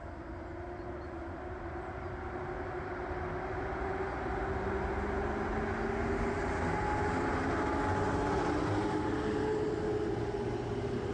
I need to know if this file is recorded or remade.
recorded